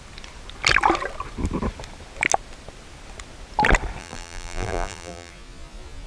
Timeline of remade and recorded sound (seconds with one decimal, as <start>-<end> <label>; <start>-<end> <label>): 0.0-4.0 recorded; 4.0-5.3 remade; 5.3-6.1 recorded